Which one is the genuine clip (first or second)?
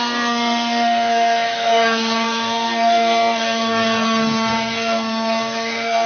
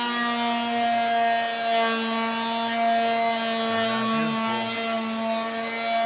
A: second